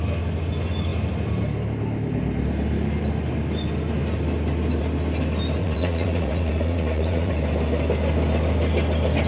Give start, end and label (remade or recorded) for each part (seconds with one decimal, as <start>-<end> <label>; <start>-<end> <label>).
0.0-5.6 recorded; 5.6-7.3 remade; 7.3-9.3 recorded